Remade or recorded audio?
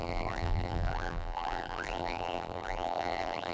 remade